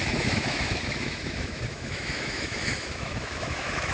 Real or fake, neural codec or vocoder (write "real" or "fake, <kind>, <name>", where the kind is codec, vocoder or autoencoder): fake, autoencoder, DAC-VAE